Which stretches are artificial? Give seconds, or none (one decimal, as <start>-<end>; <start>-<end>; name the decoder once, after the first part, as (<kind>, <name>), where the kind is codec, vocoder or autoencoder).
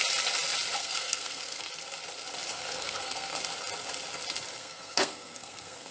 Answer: 0.8-1.7 (codec, SNAC); 2.5-3.4; 4.6-5.9